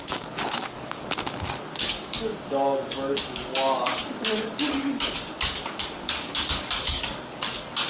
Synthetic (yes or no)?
yes